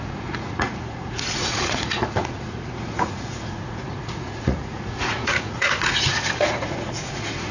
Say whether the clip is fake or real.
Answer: fake